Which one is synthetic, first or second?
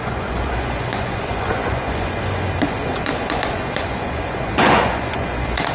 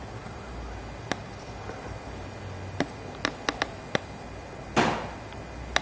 first